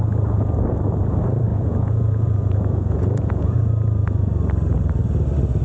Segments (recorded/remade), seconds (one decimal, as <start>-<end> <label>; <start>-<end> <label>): 0.0-1.5 recorded; 1.5-3.7 remade; 3.7-5.6 recorded